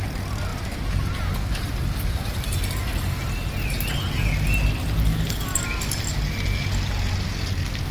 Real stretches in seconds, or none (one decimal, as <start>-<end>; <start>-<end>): 0.0-7.9